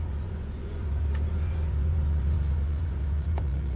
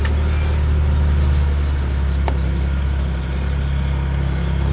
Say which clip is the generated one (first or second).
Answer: first